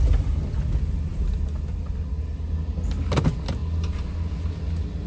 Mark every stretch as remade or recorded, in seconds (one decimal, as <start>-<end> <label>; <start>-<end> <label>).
0.0-5.1 recorded